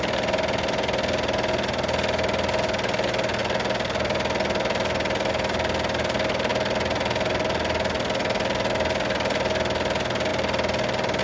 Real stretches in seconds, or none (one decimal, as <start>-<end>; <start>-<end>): 0.0-11.2